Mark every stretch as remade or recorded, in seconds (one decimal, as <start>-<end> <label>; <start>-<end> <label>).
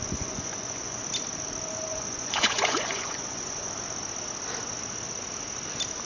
0.0-1.0 remade; 1.0-1.9 recorded; 1.9-3.7 remade; 3.7-6.0 recorded